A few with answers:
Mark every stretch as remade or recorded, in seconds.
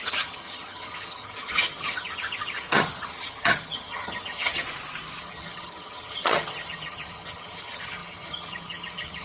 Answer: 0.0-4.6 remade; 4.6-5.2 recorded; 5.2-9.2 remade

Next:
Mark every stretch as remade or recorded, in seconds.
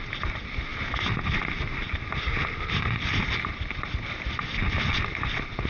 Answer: 0.0-5.7 recorded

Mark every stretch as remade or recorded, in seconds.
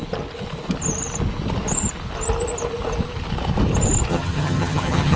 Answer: 0.0-4.1 recorded; 4.1-5.2 remade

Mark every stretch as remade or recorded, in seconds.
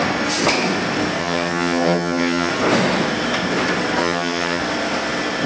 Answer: 0.0-1.2 recorded; 1.2-2.5 remade; 2.5-4.0 recorded; 4.0-4.6 remade; 4.6-5.5 recorded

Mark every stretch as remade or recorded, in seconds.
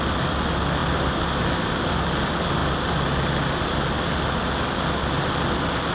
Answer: 0.0-5.9 recorded